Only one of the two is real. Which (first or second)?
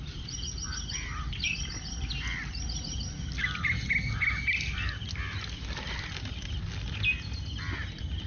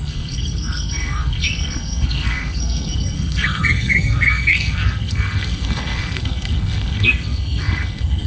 first